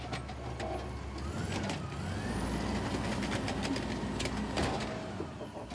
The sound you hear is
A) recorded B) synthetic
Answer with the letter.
A